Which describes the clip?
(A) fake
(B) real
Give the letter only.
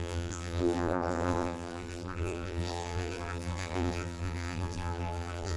A